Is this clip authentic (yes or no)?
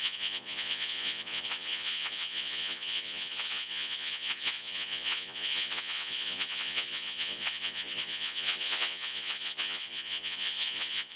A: no